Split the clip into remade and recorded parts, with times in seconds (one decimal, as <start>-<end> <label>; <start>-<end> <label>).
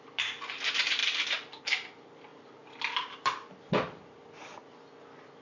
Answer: 0.0-5.4 recorded